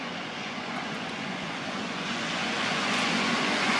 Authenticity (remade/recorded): remade